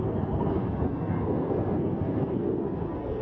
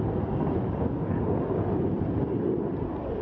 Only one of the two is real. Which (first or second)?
second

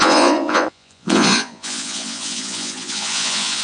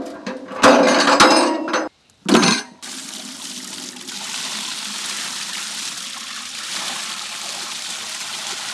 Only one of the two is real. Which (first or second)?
second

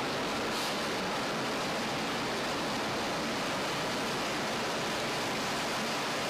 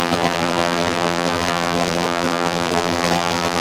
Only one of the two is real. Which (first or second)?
first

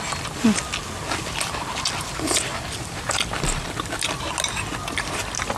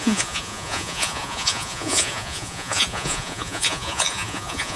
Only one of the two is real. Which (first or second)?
first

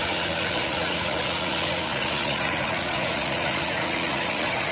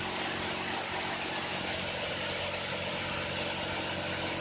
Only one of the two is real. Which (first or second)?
second